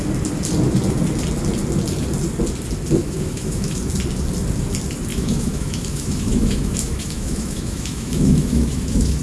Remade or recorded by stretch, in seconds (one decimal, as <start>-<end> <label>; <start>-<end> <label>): 0.0-3.0 recorded; 3.0-3.8 remade; 3.8-5.1 recorded; 5.1-9.2 remade